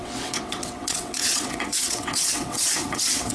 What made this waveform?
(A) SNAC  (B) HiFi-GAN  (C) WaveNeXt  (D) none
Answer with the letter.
C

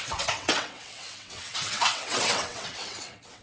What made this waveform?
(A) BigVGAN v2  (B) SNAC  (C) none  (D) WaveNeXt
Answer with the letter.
D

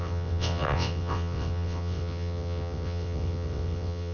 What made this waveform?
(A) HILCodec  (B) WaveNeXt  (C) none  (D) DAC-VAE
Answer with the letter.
B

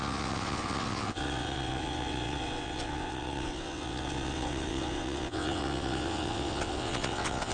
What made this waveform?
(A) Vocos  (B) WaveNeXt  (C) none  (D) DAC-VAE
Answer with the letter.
B